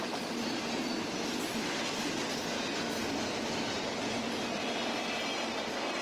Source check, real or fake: real